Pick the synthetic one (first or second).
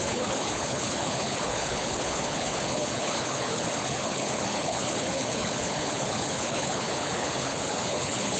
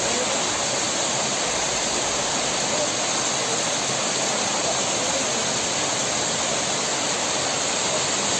first